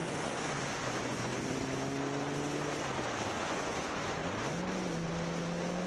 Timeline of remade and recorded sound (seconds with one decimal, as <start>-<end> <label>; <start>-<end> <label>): 0.0-1.3 remade; 1.3-3.4 recorded; 3.4-4.2 remade; 4.2-5.9 recorded